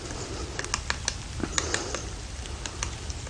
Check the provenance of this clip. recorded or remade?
recorded